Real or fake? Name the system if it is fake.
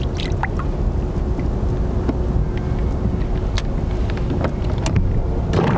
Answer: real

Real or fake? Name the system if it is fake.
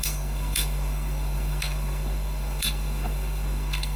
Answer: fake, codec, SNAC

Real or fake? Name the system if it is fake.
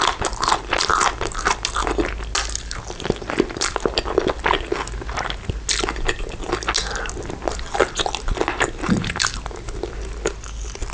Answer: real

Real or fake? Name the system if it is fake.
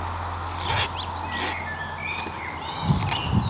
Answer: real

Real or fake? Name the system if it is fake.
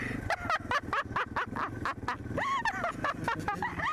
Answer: real